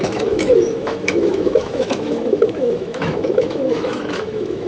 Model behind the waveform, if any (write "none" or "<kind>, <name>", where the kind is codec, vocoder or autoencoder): autoencoder, DAC-VAE